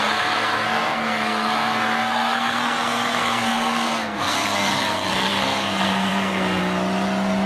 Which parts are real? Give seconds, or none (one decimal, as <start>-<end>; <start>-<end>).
6.6-7.5